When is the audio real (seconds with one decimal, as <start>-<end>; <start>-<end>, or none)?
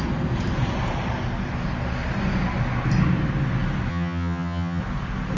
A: 0.0-3.9; 4.8-5.4